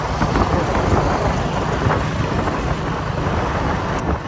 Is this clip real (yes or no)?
yes